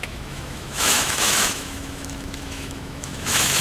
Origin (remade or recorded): remade